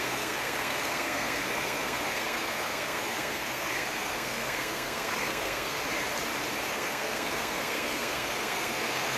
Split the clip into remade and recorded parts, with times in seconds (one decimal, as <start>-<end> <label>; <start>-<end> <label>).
0.0-5.8 remade; 5.8-6.7 recorded; 6.7-9.2 remade